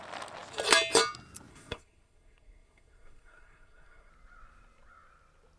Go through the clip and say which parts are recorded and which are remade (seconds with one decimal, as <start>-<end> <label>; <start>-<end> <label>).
0.0-1.5 recorded; 1.5-4.1 remade; 4.1-5.6 recorded